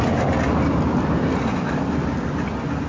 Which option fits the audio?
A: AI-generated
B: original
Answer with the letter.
B